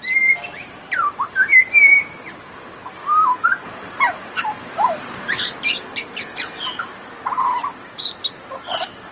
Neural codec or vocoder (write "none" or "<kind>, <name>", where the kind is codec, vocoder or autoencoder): vocoder, BigVGAN v2